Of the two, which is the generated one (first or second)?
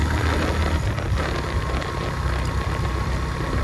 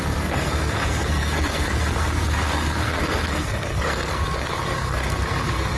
second